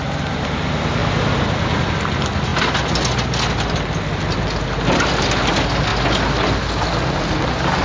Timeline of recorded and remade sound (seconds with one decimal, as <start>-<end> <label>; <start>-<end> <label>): 0.0-7.8 recorded